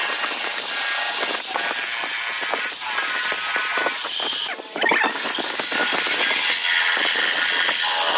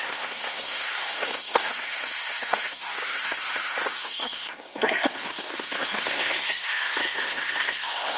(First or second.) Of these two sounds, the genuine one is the first